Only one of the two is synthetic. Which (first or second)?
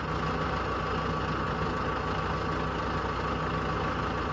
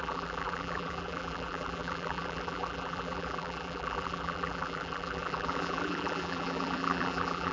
second